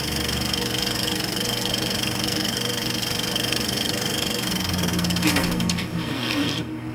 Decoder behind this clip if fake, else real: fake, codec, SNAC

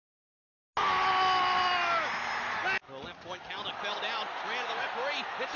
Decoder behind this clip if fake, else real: real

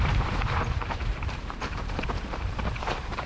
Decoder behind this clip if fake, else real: fake, vocoder, BigVGAN v2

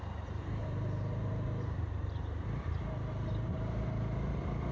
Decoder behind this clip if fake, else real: fake, vocoder, BigVGAN v2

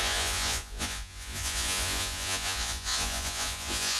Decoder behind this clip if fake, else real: fake, vocoder, Vocos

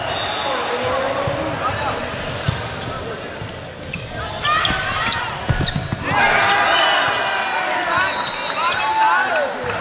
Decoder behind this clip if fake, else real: real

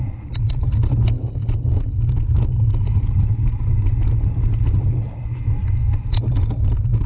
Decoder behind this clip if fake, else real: real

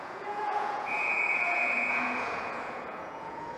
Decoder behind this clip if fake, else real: fake, vocoder, Vocos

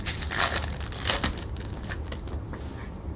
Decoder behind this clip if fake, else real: real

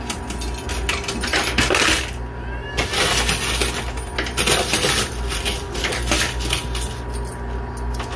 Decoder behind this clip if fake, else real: real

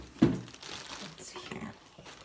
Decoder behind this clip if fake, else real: real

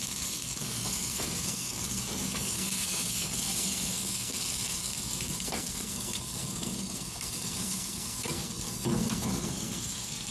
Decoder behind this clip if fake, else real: fake, codec, SNAC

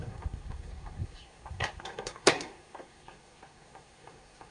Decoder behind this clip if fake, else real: fake, codec, SNAC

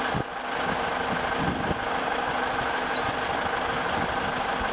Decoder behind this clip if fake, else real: real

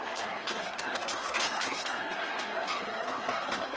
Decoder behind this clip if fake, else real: fake, codec, SNAC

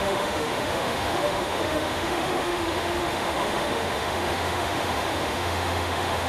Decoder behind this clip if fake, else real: fake, autoencoder, DAC-VAE